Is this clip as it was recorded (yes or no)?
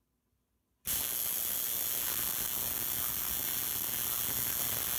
yes